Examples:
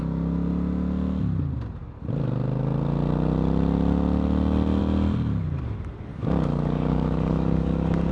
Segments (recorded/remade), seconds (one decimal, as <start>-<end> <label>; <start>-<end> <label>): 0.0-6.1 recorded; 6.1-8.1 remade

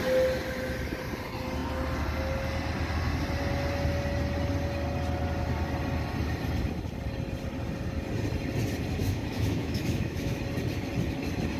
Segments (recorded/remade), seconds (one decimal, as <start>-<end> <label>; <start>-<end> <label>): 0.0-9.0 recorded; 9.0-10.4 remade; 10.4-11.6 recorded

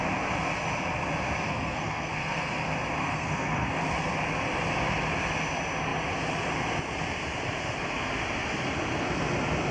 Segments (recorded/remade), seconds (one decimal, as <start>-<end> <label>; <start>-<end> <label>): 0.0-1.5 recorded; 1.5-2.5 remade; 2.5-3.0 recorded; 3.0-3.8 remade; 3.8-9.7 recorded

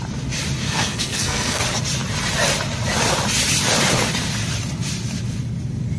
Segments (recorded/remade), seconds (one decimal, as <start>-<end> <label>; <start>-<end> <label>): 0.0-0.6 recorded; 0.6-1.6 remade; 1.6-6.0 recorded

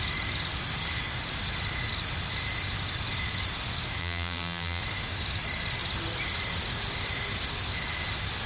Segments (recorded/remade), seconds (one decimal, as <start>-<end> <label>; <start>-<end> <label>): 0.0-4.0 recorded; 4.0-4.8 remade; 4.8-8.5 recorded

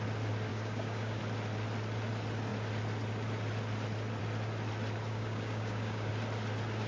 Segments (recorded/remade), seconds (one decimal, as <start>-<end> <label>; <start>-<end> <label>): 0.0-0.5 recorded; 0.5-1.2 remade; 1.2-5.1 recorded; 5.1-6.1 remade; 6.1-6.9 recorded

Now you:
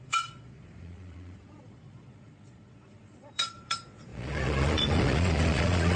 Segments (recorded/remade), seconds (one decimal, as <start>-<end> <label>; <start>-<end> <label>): 0.0-6.0 remade

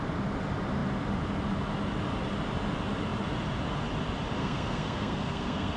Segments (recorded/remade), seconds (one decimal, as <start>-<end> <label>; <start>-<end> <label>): 0.0-4.4 recorded; 4.4-5.8 remade